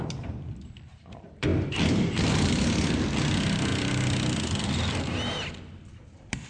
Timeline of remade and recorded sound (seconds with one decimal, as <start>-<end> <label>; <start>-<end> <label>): 0.0-3.7 remade; 3.7-5.0 recorded; 5.0-6.5 remade